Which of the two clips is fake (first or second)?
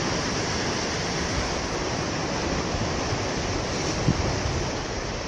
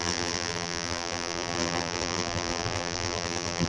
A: second